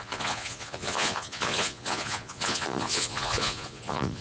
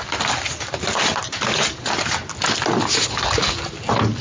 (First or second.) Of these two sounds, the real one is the second